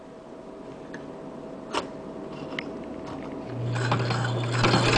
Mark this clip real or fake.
real